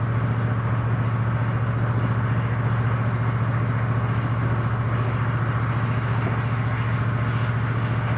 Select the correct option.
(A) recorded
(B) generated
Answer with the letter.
A